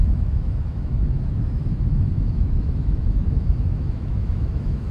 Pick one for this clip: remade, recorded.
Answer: remade